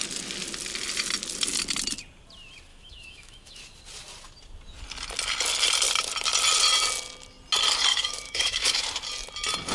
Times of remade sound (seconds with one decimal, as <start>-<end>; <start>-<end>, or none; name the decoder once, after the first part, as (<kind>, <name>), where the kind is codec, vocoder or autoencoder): 2.7-3.6 (autoencoder, DAC-VAE); 7.9-8.8